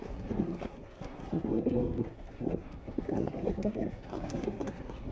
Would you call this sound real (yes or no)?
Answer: no